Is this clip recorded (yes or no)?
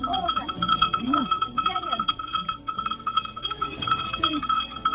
no